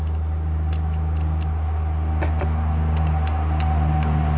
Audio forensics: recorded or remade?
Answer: recorded